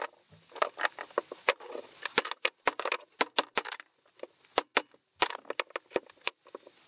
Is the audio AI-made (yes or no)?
no